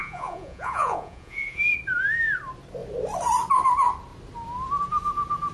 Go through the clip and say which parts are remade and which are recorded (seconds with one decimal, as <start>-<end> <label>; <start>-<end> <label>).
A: 0.0-1.6 remade; 1.6-5.5 recorded